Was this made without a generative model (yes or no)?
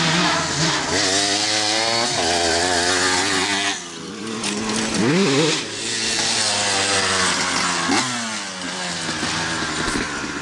yes